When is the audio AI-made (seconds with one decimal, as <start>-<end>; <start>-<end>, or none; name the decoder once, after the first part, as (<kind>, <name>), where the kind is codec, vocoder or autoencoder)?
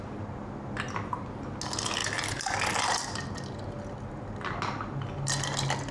none